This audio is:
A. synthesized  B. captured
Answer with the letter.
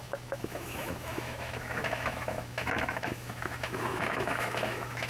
A